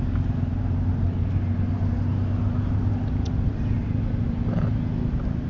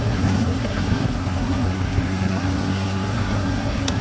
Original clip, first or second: first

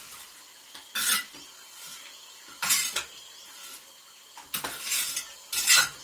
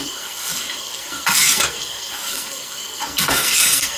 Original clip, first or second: first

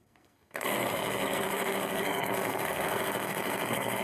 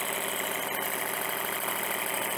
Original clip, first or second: second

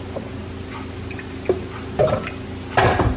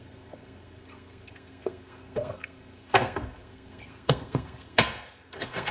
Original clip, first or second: first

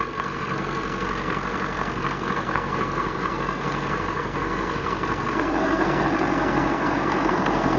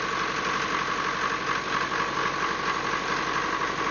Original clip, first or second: second